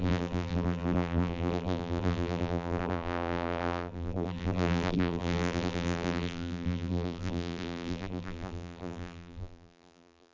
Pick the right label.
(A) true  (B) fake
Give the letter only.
B